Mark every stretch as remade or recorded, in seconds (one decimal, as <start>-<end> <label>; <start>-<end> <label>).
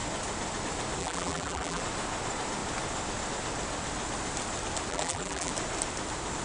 0.0-1.0 recorded; 1.0-1.8 remade; 1.8-4.9 recorded; 4.9-5.5 remade; 5.5-6.4 recorded